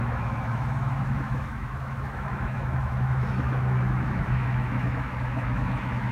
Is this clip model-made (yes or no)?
yes